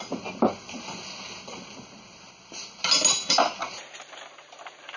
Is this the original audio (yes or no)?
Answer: yes